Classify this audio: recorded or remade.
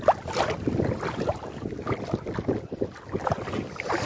recorded